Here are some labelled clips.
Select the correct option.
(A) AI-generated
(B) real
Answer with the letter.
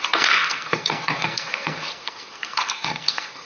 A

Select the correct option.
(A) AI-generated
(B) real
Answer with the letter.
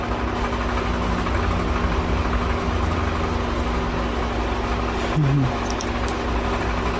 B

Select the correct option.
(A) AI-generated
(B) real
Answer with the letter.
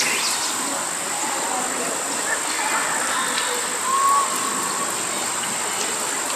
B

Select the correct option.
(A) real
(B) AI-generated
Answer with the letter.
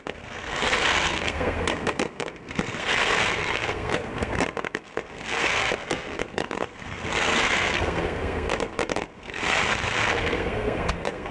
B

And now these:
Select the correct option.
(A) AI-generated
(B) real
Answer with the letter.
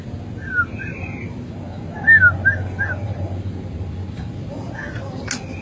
B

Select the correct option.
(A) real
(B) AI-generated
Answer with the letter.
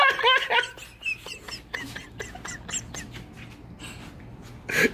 A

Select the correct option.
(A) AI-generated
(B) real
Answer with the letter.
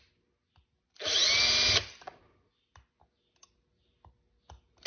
B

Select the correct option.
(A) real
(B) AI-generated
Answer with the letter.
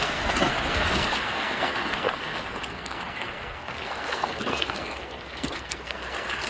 B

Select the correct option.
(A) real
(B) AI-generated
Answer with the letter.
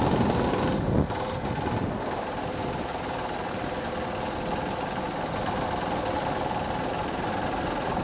A